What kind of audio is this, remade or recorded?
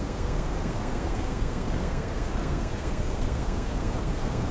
remade